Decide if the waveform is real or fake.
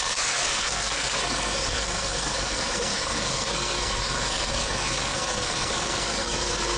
fake